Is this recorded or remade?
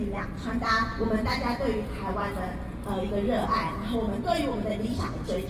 recorded